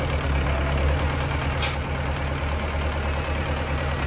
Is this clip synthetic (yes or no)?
no